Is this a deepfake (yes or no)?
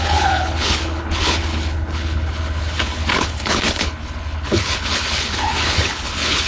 yes